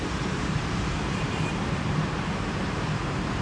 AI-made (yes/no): yes